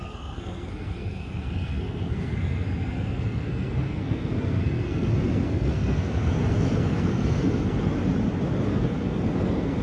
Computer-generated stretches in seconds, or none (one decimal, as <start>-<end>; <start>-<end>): 0.0-7.9; 8.7-9.8